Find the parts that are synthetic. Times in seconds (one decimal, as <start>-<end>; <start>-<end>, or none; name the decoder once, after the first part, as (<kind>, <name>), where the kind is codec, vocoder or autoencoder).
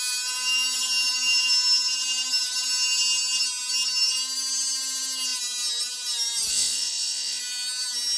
6.5-7.4 (vocoder, Vocos)